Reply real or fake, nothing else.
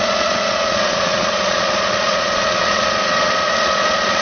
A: fake